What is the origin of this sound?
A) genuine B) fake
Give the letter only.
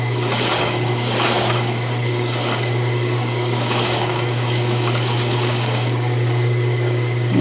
B